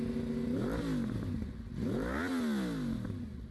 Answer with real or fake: real